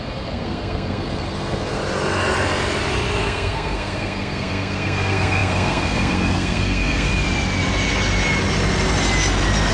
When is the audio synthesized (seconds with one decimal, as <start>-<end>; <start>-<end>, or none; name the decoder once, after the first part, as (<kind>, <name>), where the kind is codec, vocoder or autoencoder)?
0.0-1.8 (codec, SNAC); 3.2-7.1